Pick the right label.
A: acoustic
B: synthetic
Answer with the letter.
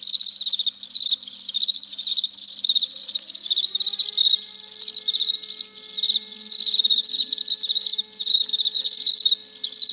A